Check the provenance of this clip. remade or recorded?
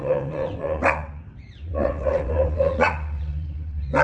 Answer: remade